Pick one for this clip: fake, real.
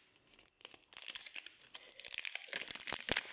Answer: real